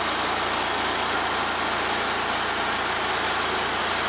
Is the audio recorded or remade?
recorded